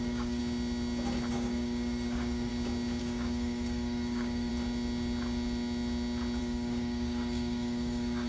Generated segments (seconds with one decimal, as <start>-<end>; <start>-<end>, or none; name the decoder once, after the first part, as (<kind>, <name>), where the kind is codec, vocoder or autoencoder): 0.0-0.4 (codec, DAC); 1.3-2.5; 3.0-4.5; 6.4-8.3